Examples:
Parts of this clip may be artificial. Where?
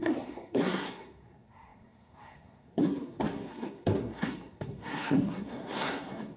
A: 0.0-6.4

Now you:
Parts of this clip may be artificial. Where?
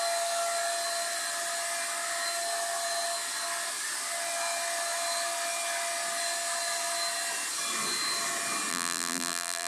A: 8.7-9.7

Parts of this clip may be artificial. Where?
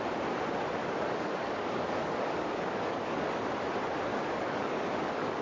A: 0.8-3.4; 4.1-5.4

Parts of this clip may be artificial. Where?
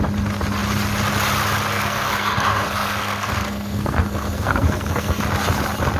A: 1.7-5.2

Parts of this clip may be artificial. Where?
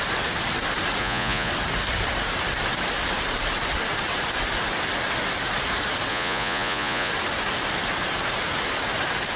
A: 1.0-1.5; 6.1-7.1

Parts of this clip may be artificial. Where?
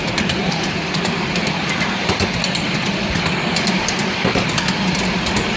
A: 0.4-1.0; 3.5-4.0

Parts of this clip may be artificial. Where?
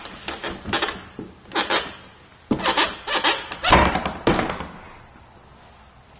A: none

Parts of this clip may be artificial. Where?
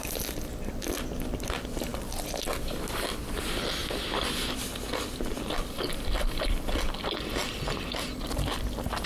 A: none